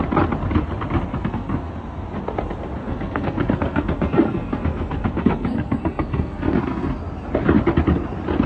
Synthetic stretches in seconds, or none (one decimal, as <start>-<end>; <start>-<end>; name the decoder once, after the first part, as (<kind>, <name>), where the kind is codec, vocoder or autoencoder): 1.1-1.7 (codec, SNAC); 2.8-7.0